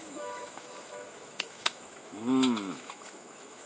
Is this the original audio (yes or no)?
no